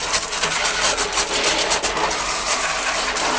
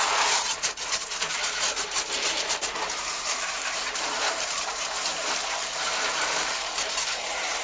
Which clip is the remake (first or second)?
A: second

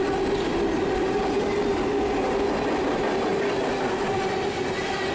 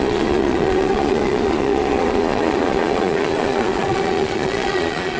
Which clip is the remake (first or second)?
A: second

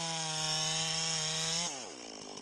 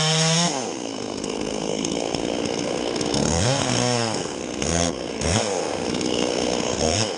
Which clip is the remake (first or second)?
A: second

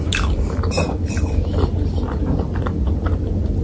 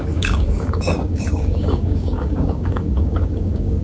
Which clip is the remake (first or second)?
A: second